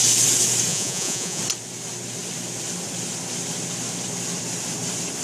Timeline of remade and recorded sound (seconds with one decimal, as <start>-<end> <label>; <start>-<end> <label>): 0.0-0.7 recorded; 0.7-1.4 remade; 1.4-5.2 recorded